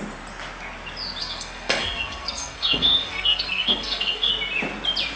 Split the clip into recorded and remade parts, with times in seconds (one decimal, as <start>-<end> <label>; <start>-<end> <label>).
0.0-1.2 recorded; 1.2-4.3 remade; 4.3-5.2 recorded